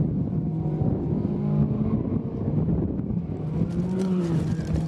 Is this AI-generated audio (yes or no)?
no